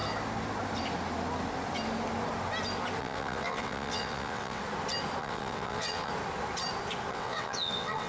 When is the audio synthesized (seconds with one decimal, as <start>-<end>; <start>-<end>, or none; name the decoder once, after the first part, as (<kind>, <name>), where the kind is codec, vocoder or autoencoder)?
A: 3.0-4.6 (vocoder, WaveNeXt); 5.2-6.1; 7.1-8.1